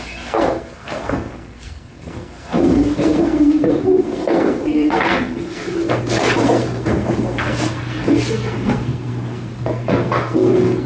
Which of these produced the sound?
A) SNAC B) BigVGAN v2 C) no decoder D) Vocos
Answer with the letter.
A